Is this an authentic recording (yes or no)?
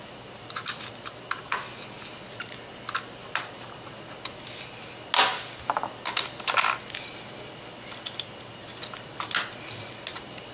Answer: yes